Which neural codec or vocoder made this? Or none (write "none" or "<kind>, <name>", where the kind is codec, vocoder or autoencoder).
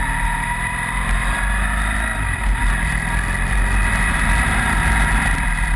none